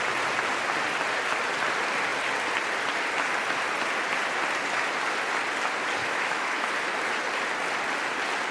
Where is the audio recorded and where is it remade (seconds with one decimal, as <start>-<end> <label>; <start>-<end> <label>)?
0.0-6.0 recorded; 6.0-6.7 remade; 6.7-8.5 recorded